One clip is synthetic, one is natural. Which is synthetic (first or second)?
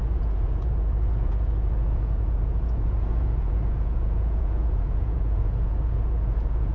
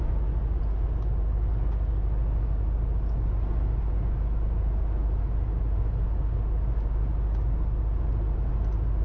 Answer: first